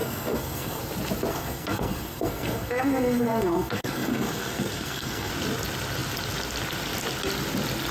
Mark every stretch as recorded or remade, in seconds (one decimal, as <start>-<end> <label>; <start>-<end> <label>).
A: 0.0-0.8 remade; 0.8-1.3 recorded; 1.3-5.3 remade; 5.3-7.9 recorded

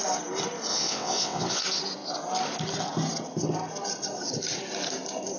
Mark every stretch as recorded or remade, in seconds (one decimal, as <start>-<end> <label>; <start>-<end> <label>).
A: 0.0-0.7 recorded; 0.7-1.6 remade; 1.6-5.4 recorded

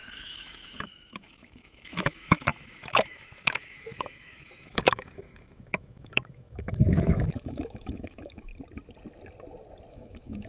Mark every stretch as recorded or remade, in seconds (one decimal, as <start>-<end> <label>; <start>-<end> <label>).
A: 0.0-8.5 remade; 8.5-9.9 recorded; 9.9-10.5 remade

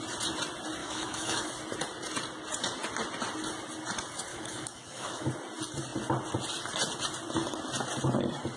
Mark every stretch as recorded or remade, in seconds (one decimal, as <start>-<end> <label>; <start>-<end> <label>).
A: 0.0-0.8 recorded; 0.8-1.5 remade; 1.5-4.3 recorded; 4.3-5.3 remade; 5.3-8.6 recorded

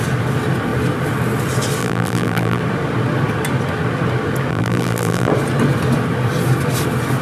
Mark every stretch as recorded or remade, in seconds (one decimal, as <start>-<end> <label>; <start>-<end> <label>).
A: 0.0-1.8 recorded; 1.8-2.6 remade; 2.6-4.5 recorded; 4.5-5.3 remade; 5.3-7.2 recorded

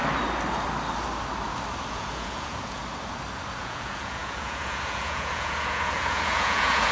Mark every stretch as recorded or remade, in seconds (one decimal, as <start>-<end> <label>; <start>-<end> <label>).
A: 0.0-1.9 recorded; 1.9-2.8 remade; 2.8-3.6 recorded; 3.6-6.9 remade